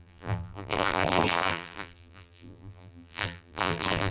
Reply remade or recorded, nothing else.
remade